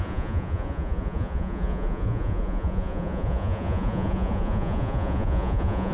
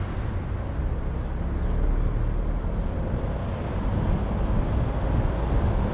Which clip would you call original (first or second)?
second